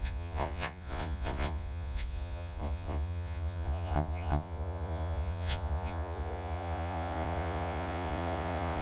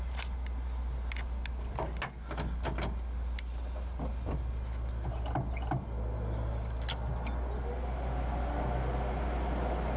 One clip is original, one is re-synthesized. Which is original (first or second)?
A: second